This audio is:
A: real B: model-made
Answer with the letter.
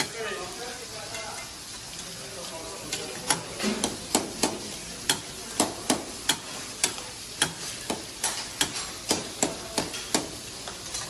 A